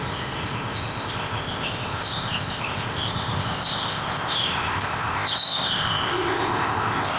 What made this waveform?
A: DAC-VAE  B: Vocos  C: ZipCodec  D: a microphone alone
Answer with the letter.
C